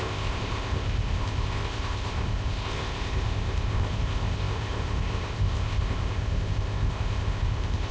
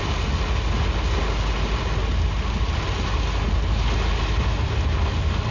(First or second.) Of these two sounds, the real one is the second